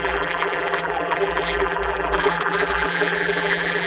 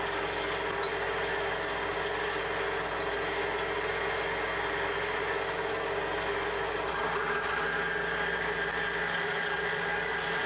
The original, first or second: second